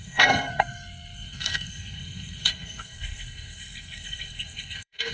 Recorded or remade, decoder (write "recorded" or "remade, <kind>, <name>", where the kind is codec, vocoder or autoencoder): remade, codec, SNAC